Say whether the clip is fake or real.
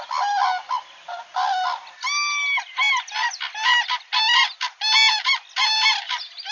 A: real